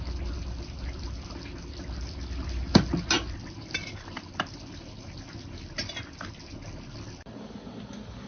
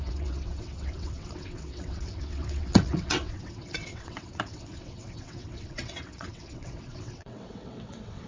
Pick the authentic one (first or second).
first